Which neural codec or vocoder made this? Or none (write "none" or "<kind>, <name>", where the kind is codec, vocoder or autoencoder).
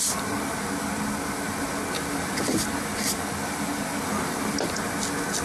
none